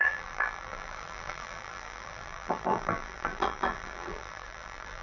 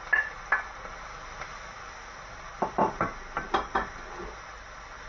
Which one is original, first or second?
second